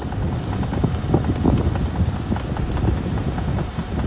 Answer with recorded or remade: recorded